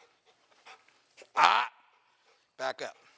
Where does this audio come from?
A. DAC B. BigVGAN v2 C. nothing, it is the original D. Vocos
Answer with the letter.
C